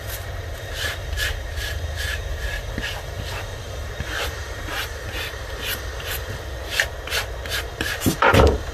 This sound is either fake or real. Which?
fake